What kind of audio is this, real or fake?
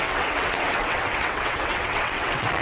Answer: fake